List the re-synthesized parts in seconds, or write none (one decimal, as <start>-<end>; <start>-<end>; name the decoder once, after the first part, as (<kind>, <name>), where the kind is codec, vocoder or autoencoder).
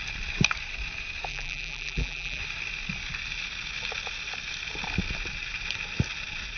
1.3-2.4 (vocoder, BigVGAN v2)